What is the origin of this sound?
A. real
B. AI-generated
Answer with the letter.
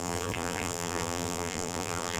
B